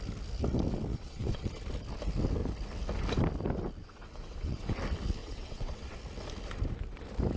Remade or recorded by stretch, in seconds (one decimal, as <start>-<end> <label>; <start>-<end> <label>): 0.0-0.9 recorded; 0.9-1.5 remade; 1.5-3.8 recorded; 3.8-4.8 remade; 4.8-5.2 recorded; 5.2-6.0 remade; 6.0-7.4 recorded